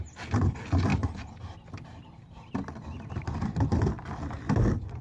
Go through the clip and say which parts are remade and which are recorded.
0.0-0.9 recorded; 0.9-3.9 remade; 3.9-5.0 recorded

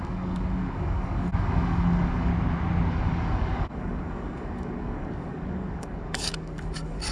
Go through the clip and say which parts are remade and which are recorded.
0.0-2.3 remade; 2.3-2.9 recorded; 2.9-7.1 remade

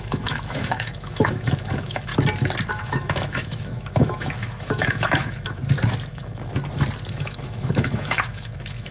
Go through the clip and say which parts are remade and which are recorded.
0.0-2.1 remade; 2.1-2.7 recorded; 2.7-5.6 remade; 5.6-6.1 recorded; 6.1-6.5 remade; 6.5-7.1 recorded; 7.1-8.9 remade

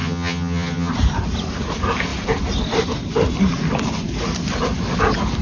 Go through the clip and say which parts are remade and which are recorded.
0.0-0.9 remade; 0.9-5.4 recorded

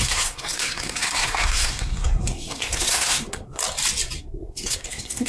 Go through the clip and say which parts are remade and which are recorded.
0.0-3.6 remade; 3.6-4.2 recorded; 4.2-5.3 remade

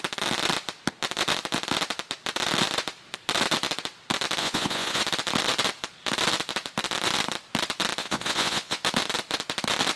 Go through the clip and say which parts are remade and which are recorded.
0.0-4.4 recorded; 4.4-5.0 remade; 5.0-8.0 recorded; 8.0-8.8 remade; 8.8-10.0 recorded

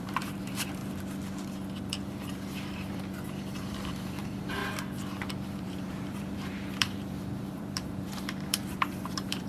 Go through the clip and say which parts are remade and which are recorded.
0.0-0.8 remade; 0.8-1.9 recorded; 1.9-4.6 remade; 4.6-5.3 recorded; 5.3-9.5 remade